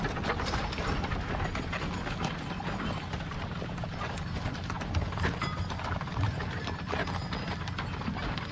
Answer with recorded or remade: recorded